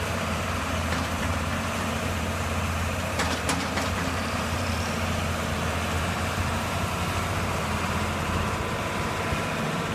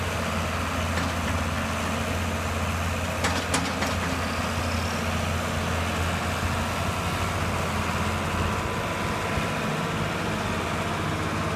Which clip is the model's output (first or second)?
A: first